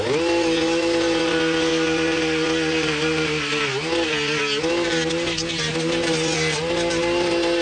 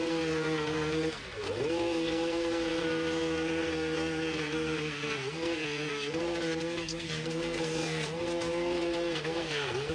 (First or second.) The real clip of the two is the first